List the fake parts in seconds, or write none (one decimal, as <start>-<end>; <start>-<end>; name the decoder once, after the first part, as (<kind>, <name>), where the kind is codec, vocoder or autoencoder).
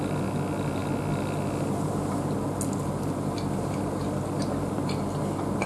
none